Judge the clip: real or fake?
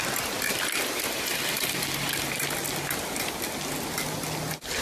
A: real